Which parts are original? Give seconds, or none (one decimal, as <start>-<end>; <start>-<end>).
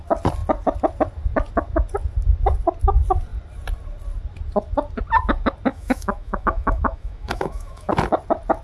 0.0-5.7; 7.9-8.6